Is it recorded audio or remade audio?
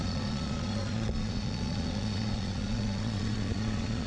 remade